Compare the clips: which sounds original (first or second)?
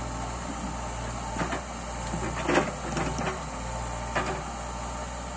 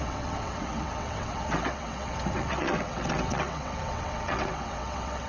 first